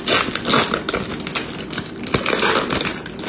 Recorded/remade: recorded